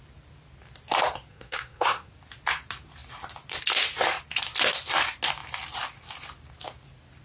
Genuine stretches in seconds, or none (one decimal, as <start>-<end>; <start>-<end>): 0.0-1.3; 2.1-7.2